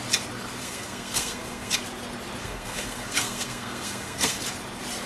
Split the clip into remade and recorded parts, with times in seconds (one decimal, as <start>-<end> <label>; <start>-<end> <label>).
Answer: 0.0-0.6 recorded; 0.6-1.7 remade; 1.7-2.4 recorded; 2.4-4.4 remade; 4.4-5.1 recorded

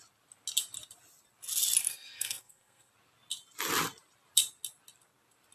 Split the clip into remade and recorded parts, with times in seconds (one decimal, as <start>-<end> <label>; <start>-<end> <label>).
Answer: 0.0-1.8 recorded; 1.8-2.9 remade; 2.9-5.5 recorded

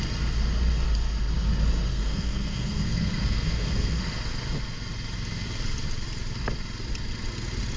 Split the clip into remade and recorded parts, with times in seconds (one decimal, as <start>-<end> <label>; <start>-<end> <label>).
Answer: 0.0-1.9 recorded; 1.9-4.0 remade; 4.0-7.8 recorded

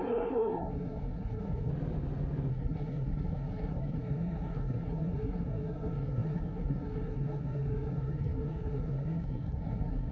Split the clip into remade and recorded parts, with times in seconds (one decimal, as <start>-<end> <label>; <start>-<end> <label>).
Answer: 0.0-1.7 remade; 1.7-2.5 recorded; 2.5-10.1 remade

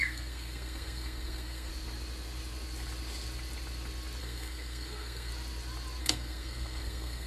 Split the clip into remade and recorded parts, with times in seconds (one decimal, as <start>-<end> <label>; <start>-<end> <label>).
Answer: 0.0-1.7 remade; 1.7-4.2 recorded; 4.2-5.3 remade; 5.3-6.0 recorded; 6.0-7.3 remade

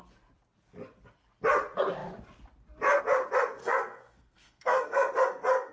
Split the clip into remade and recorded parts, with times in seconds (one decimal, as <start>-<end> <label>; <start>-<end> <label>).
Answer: 0.0-3.6 recorded; 3.6-5.1 remade; 5.1-5.7 recorded

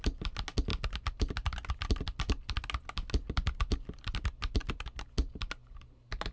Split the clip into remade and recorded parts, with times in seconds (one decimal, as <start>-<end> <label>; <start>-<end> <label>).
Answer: 0.0-6.3 recorded

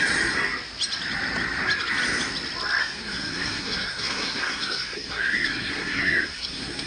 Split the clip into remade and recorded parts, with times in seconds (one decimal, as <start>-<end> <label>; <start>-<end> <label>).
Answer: 0.0-2.8 recorded; 2.8-6.9 remade